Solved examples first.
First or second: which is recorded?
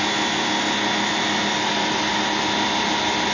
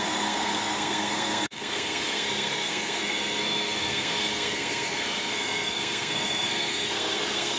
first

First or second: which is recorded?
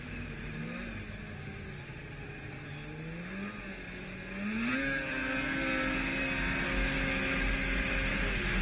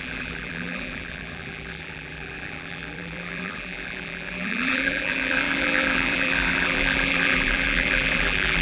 first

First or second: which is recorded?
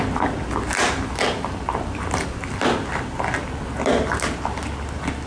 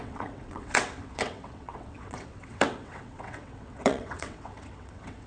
first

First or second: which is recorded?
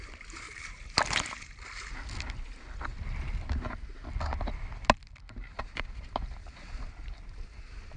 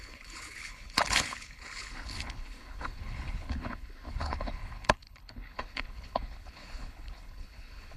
first